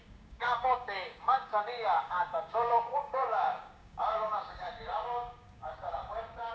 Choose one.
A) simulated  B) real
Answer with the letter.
A